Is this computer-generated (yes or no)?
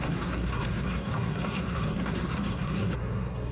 yes